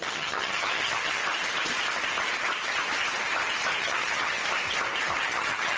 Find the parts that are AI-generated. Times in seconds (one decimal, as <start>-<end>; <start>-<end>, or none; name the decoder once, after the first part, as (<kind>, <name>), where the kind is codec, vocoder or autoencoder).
0.0-1.2 (vocoder, HiFi-GAN); 3.8-4.4; 5.2-5.8